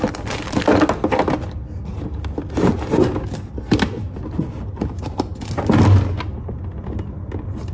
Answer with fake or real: real